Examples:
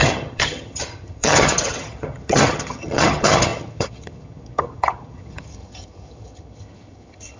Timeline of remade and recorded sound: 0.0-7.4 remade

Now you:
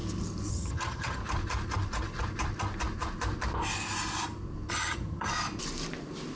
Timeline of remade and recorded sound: 0.0-0.5 recorded; 0.5-1.2 remade; 1.2-4.7 recorded; 4.7-5.3 remade; 5.3-6.4 recorded

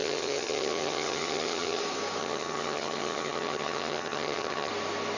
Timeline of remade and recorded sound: 0.0-1.8 remade; 1.8-2.2 recorded; 2.2-4.7 remade; 4.7-5.2 recorded